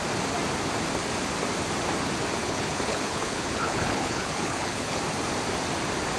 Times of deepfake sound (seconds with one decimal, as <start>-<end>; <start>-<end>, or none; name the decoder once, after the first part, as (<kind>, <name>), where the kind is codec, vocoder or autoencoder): 2.4-5.0 (codec, HILCodec)